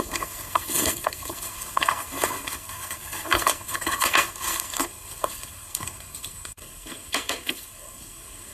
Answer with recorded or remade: remade